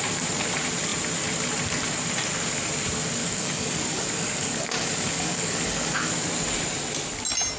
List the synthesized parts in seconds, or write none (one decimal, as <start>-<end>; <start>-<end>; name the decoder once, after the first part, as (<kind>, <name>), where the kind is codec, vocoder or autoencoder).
3.2-6.1 (codec, DAC)